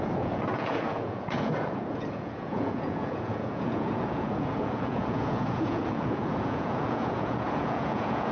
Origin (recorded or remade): remade